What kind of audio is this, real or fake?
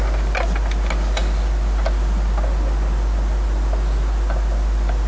real